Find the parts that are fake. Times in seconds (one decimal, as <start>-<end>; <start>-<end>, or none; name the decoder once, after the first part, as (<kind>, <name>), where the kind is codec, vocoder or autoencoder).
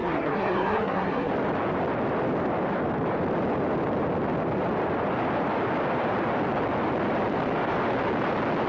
0.0-1.3 (codec, SNAC)